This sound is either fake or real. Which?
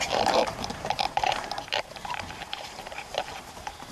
fake